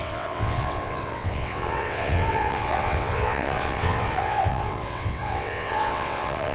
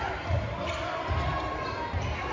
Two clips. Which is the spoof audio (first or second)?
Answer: first